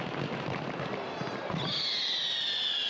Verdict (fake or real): real